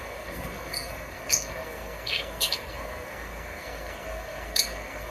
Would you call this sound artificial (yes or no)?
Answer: yes